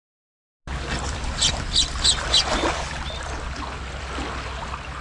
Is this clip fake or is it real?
real